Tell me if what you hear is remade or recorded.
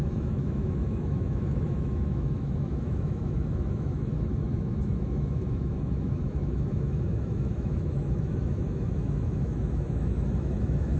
remade